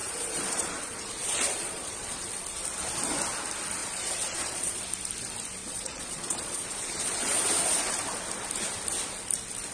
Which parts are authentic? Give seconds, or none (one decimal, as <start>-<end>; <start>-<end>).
2.3-3.8; 4.8-5.6; 7.8-9.7

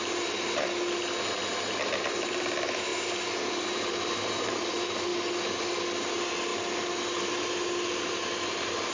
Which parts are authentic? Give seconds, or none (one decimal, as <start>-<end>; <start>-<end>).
0.0-8.9

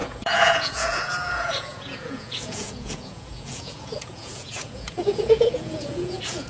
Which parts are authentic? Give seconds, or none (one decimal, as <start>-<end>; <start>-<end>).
none

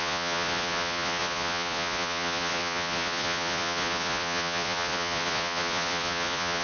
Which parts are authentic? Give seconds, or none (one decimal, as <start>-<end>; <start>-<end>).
none

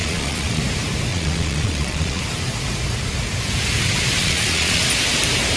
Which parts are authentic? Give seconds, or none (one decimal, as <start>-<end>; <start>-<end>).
0.6-1.1; 2.2-4.2; 4.8-5.6